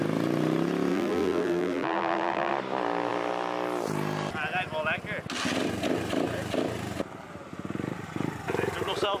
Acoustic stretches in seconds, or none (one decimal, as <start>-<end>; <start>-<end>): 0.0-0.9; 2.5-9.2